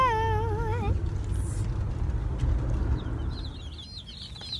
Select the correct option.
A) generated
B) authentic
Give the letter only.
B